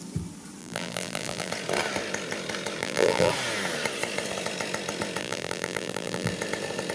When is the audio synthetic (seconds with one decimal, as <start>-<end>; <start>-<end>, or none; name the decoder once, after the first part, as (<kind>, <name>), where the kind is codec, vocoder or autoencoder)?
0.6-1.5 (vocoder, BigVGAN v2); 2.8-3.3; 5.2-6.3